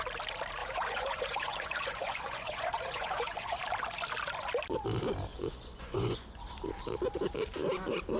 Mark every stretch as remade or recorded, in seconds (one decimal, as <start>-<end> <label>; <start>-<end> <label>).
0.0-0.6 recorded; 0.6-3.6 remade; 3.6-5.3 recorded; 5.3-6.4 remade; 6.4-8.2 recorded